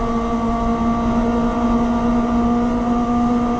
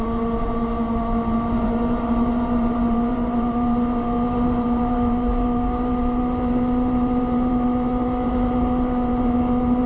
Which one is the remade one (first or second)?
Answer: second